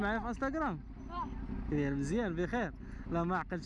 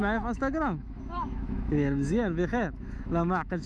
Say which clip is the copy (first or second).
second